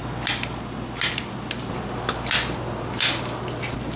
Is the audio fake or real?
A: real